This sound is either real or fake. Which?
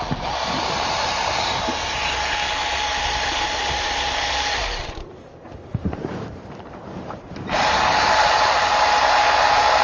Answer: fake